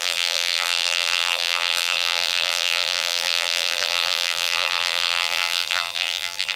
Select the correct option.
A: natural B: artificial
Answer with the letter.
B